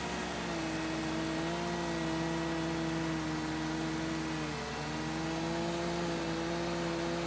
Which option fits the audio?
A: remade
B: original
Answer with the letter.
B